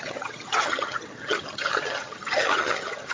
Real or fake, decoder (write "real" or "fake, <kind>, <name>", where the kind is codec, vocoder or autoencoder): fake, vocoder, HiFi-GAN